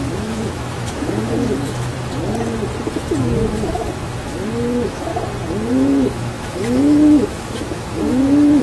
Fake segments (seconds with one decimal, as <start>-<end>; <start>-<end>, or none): 0.0-1.9; 3.2-5.1; 5.7-8.6